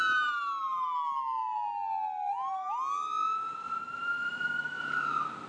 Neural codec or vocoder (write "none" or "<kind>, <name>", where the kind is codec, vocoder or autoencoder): none